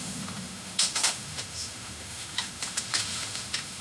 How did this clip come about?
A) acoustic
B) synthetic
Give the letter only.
B